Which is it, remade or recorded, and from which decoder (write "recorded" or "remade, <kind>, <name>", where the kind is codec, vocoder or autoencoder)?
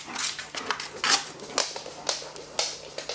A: recorded